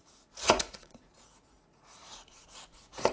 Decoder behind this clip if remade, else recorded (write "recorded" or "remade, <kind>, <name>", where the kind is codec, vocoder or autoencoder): remade, vocoder, Vocos